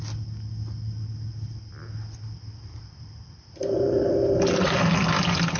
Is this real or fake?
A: real